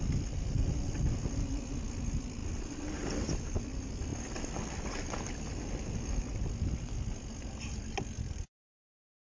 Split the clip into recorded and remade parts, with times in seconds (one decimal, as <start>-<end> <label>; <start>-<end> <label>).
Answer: 0.0-9.2 recorded